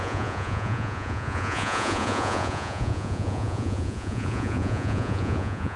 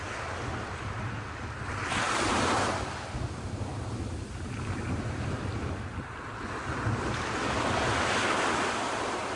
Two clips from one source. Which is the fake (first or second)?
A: first